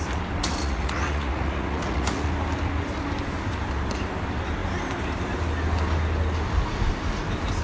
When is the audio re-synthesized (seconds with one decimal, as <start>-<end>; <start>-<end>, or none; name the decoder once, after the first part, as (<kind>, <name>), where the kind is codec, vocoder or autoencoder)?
0.6-2.3 (vocoder, Vocos)